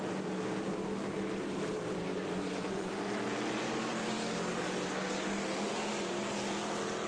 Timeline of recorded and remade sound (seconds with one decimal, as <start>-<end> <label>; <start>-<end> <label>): 0.0-2.1 recorded; 2.1-2.9 remade; 2.9-7.1 recorded